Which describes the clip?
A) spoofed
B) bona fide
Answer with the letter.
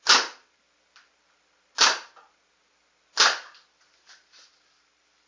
B